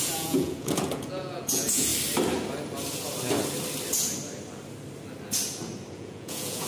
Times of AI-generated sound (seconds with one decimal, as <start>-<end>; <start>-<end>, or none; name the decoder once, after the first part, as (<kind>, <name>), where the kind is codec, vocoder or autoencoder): 0.0-1.9 (vocoder, Vocos); 5.9-6.7